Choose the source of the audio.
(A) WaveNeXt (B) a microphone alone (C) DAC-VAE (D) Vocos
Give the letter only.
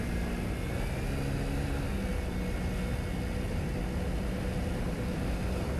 B